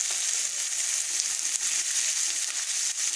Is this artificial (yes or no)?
no